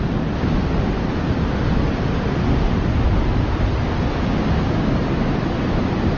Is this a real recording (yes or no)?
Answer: yes